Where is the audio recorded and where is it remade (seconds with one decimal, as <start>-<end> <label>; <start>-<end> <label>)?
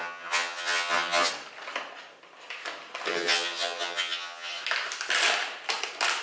0.0-1.3 remade; 1.3-3.1 recorded; 3.1-4.6 remade; 4.6-6.2 recorded